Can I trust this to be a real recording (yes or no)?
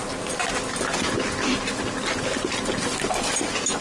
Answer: yes